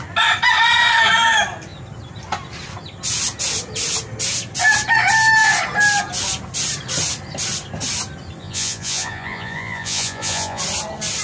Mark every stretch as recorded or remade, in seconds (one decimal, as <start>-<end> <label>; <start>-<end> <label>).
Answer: 0.0-8.4 recorded; 8.4-10.6 remade; 10.6-11.2 recorded